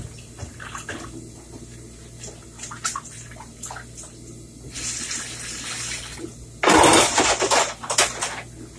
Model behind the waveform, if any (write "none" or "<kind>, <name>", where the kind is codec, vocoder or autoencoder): none